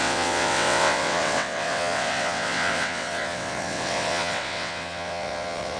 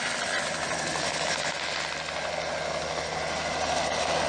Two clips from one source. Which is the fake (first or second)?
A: first